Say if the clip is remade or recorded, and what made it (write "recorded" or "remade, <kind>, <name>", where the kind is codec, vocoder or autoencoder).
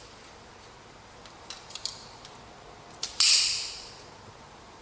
remade, vocoder, BigVGAN v2